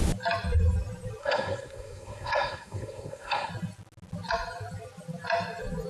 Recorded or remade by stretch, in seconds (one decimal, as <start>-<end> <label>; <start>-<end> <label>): 0.0-1.2 recorded; 1.2-3.5 remade; 3.5-5.9 recorded